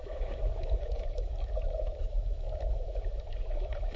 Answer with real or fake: fake